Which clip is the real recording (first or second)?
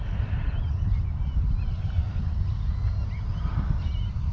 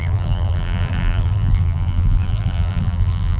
first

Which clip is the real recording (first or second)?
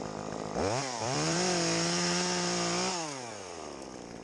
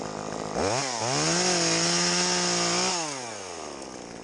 second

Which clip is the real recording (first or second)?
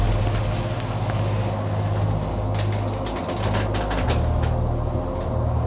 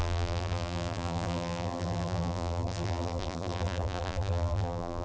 first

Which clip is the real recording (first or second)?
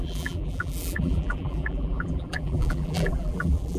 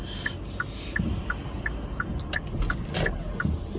second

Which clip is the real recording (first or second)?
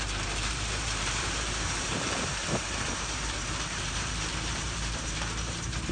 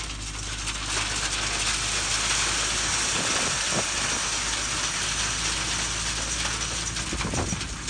second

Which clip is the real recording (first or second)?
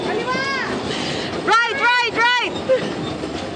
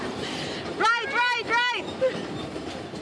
first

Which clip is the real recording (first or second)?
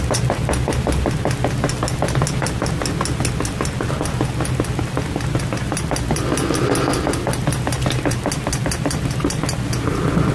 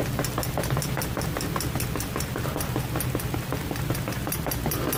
first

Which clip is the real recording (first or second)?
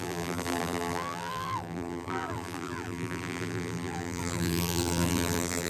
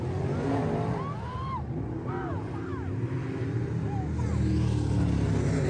second